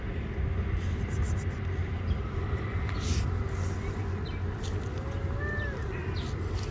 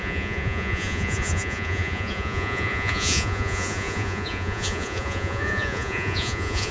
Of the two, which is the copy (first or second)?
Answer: second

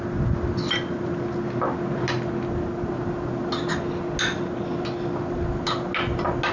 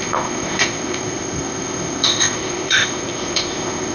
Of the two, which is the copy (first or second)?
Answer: second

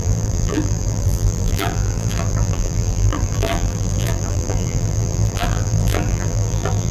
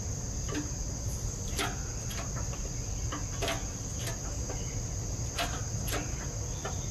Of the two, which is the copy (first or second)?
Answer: first